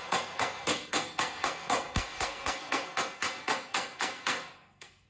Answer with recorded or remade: remade